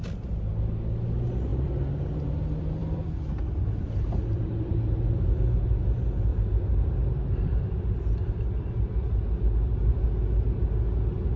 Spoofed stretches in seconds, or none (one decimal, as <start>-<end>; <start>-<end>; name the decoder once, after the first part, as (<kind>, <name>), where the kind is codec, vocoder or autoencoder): 1.5-2.3 (vocoder, BigVGAN v2); 2.8-5.4; 6.3-8.3